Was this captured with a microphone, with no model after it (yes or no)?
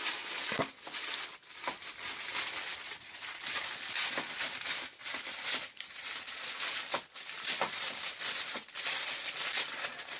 yes